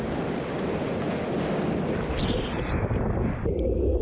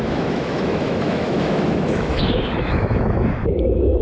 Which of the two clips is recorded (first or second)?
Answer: first